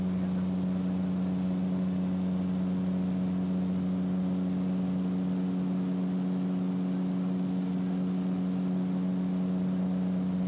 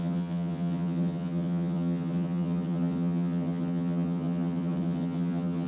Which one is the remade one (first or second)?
second